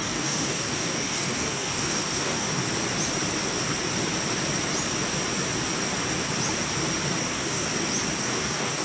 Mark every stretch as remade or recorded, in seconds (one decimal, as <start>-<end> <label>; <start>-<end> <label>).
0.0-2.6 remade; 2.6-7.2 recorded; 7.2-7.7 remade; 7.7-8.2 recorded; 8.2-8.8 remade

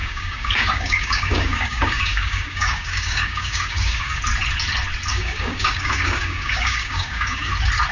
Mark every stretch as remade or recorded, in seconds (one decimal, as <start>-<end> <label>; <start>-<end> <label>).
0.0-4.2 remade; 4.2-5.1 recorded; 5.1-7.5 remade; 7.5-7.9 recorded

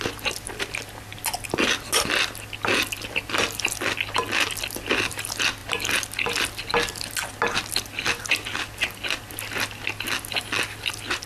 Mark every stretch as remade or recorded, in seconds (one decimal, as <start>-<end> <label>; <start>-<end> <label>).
0.0-11.3 recorded

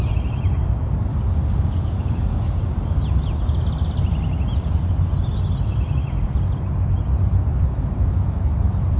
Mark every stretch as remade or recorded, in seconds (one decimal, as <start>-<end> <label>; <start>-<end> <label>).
0.0-1.1 recorded; 1.1-2.6 remade; 2.6-9.0 recorded

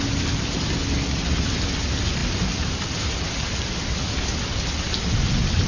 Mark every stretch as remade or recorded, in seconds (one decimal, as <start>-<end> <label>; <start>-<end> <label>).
0.0-5.7 recorded